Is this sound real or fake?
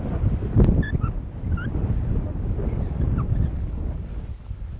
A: real